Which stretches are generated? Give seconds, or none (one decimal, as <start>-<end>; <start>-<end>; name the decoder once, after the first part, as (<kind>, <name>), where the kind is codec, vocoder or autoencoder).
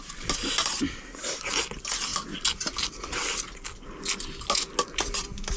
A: none